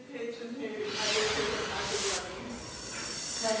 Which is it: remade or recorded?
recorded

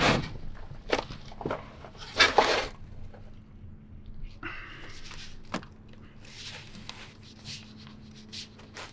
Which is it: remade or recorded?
recorded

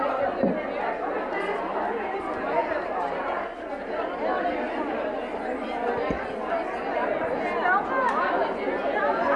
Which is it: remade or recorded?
recorded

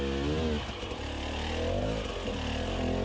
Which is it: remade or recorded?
recorded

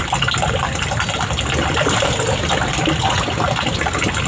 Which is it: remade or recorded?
recorded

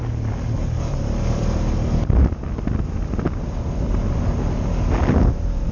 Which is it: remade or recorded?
recorded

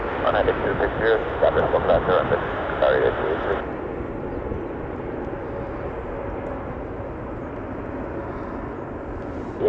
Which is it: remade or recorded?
recorded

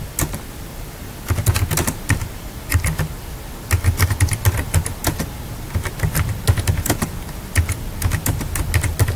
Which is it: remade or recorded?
recorded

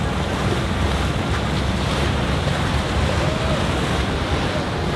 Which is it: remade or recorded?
recorded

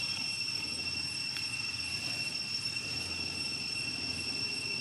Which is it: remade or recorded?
recorded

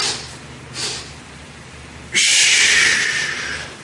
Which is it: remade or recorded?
remade